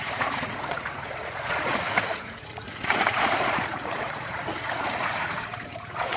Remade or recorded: remade